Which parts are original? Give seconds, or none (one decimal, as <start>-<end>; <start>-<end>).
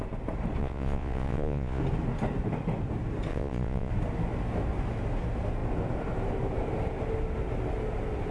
0.0-0.6; 1.8-3.3; 3.9-8.3